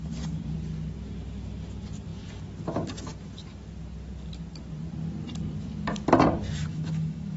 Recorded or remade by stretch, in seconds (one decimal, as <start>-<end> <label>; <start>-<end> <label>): 0.0-6.7 recorded; 6.7-7.4 remade